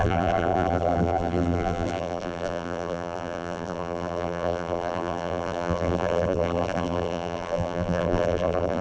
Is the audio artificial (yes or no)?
yes